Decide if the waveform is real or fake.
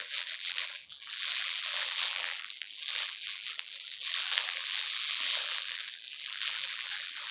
fake